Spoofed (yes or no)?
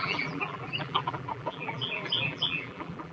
yes